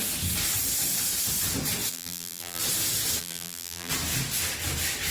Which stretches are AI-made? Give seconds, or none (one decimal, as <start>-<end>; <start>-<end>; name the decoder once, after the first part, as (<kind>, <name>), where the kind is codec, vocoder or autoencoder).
1.9-2.6 (vocoder, BigVGAN v2); 3.2-3.9